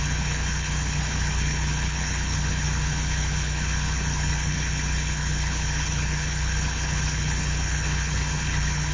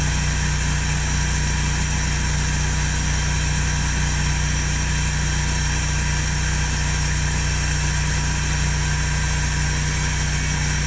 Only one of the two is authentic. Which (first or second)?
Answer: second